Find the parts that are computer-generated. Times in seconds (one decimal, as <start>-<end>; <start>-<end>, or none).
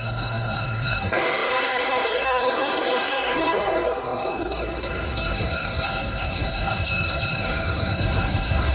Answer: 0.0-8.7